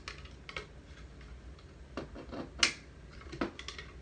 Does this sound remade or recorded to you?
recorded